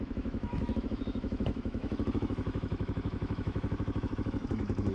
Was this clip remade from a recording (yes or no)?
yes